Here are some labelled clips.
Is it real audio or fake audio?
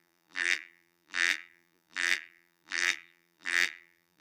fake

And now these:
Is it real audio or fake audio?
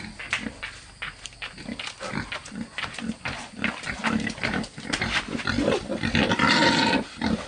fake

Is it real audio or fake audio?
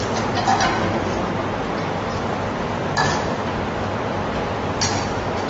real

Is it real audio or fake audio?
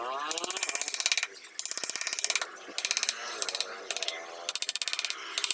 real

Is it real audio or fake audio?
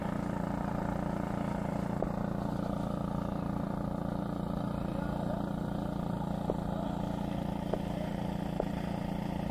real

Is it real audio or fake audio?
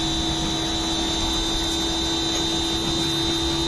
real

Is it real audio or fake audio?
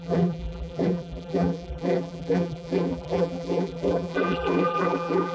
fake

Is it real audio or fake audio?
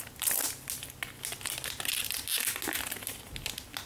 real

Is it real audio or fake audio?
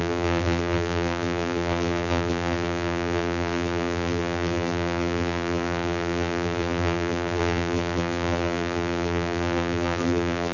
fake